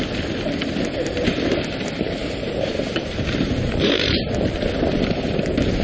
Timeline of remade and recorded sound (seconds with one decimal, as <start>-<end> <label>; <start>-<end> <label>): 0.0-2.2 recorded; 2.2-4.3 remade; 4.3-5.8 recorded